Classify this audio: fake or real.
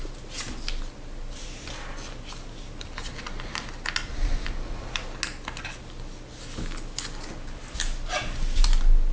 real